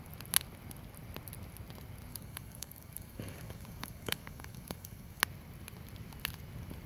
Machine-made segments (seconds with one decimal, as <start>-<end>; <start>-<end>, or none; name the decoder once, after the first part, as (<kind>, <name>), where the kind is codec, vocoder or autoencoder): 2.1-5.2 (codec, DAC)